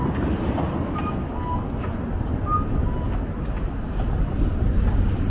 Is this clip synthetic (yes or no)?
no